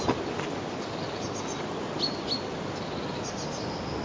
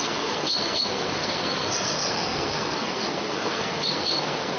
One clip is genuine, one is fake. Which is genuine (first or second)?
first